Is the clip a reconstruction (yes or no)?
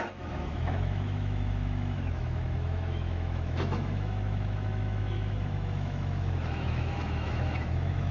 yes